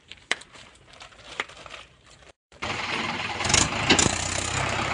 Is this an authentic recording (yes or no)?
no